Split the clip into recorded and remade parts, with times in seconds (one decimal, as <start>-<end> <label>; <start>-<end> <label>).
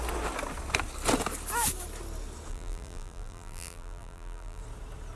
0.0-2.5 recorded; 2.5-4.6 remade; 4.6-5.2 recorded